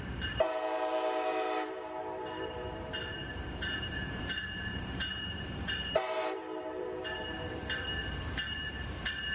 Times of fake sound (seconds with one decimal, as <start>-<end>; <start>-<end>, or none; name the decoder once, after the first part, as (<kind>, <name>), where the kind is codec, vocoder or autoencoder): 0.0-9.3 (vocoder, BigVGAN v2)